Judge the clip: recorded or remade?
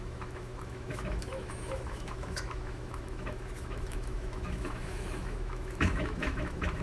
remade